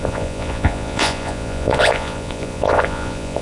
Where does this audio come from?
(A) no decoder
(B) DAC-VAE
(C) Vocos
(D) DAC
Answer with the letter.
C